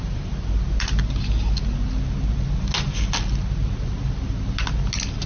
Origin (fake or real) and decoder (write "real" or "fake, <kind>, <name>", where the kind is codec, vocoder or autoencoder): real